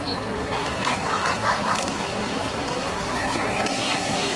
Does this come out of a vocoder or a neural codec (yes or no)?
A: yes